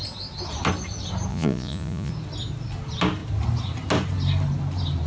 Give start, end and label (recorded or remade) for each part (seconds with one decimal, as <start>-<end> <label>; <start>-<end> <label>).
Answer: 0.0-1.3 recorded; 1.3-2.1 remade; 2.1-5.1 recorded